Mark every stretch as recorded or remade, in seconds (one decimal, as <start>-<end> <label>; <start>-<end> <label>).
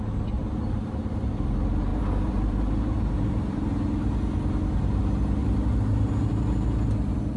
0.0-0.4 recorded; 0.4-1.3 remade; 1.3-1.9 recorded; 1.9-3.7 remade; 3.7-5.4 recorded; 5.4-6.1 remade; 6.1-7.4 recorded